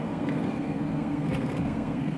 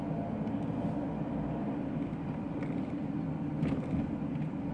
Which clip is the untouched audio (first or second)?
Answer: second